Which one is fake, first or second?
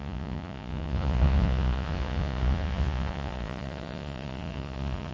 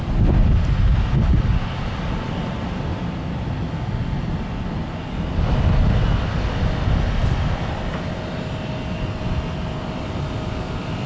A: first